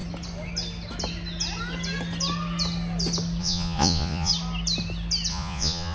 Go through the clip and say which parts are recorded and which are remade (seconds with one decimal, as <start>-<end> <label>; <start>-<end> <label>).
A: 0.0-3.4 recorded; 3.4-4.3 remade; 4.3-5.3 recorded; 5.3-5.9 remade